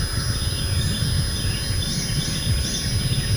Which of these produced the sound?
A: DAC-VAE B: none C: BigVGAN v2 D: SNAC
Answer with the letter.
B